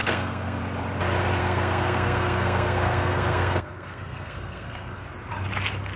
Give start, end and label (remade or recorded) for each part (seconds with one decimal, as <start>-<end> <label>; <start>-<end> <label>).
0.0-0.6 remade; 0.6-1.4 recorded; 1.4-5.0 remade; 5.0-6.0 recorded